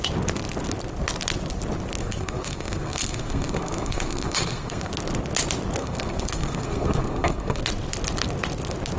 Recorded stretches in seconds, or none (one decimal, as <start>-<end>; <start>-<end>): 0.0-2.0; 4.9-5.8; 7.6-9.0